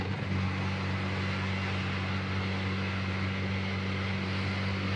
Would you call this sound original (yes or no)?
yes